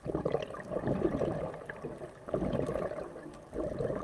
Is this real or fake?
real